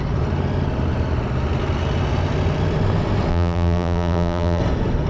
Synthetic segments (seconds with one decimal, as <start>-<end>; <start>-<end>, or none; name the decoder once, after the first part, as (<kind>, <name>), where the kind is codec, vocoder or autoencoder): 3.3-4.6 (vocoder, BigVGAN v2)